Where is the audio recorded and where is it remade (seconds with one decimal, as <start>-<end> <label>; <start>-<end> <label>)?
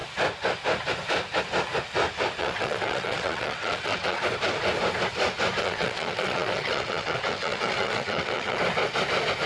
0.0-2.4 recorded; 2.4-4.2 remade; 4.2-5.6 recorded; 5.6-8.6 remade; 8.6-9.5 recorded